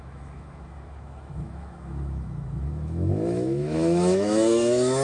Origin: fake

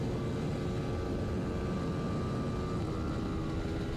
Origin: real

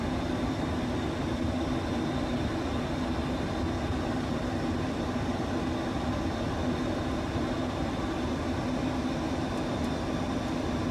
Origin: real